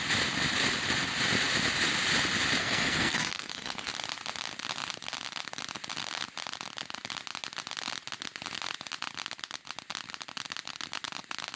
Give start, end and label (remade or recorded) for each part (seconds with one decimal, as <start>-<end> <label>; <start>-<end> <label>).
0.0-2.6 recorded; 2.6-3.9 remade; 3.9-11.6 recorded